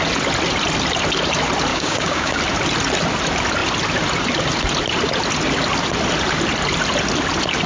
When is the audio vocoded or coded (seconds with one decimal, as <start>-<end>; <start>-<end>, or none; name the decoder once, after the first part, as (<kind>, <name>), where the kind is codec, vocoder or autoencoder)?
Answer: 1.7-2.4 (codec, DAC)